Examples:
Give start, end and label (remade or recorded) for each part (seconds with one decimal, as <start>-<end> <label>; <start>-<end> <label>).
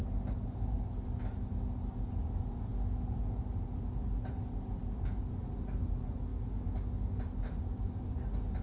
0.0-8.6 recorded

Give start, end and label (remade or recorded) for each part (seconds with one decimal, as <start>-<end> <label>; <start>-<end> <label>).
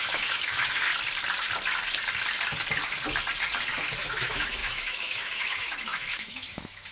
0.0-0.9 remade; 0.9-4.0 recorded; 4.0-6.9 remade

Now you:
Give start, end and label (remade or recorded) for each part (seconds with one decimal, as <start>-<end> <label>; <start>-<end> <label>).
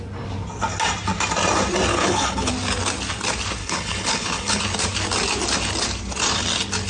0.0-1.9 recorded; 1.9-2.5 remade; 2.5-3.6 recorded; 3.6-4.6 remade; 4.6-6.9 recorded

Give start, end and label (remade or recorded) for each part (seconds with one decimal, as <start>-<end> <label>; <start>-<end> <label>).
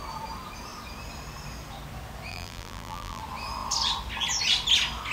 0.0-2.3 recorded; 2.3-3.2 remade; 3.2-5.1 recorded